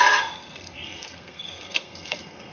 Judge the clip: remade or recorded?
remade